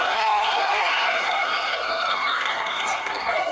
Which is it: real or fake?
fake